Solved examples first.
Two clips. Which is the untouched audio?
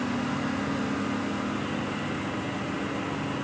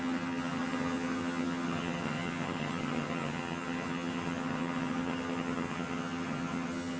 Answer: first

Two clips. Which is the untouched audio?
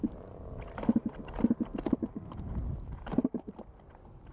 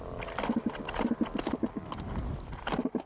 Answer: second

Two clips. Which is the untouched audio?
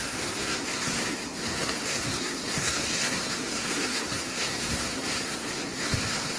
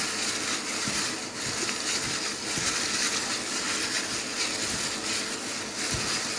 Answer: second